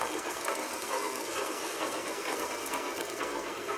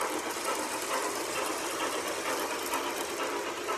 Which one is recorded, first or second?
second